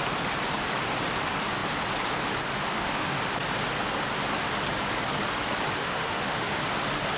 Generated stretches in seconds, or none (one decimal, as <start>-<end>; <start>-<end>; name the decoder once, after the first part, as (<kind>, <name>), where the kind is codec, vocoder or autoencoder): 2.7-3.2 (autoencoder, DAC-VAE); 5.8-6.6